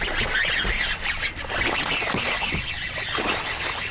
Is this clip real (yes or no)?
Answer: yes